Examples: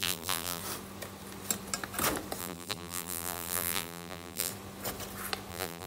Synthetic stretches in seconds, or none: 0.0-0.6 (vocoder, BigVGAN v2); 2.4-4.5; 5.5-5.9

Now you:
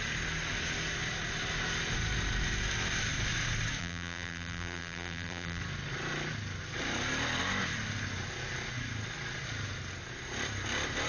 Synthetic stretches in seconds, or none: 3.8-5.6 (vocoder, BigVGAN v2)

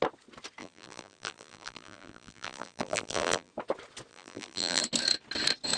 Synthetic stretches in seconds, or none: 0.6-3.5 (vocoder, BigVGAN v2); 4.1-4.8